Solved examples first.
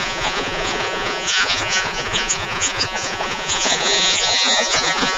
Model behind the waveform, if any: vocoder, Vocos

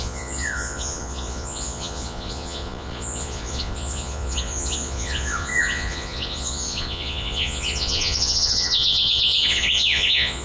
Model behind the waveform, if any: vocoder, Vocos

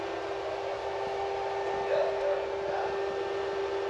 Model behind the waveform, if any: none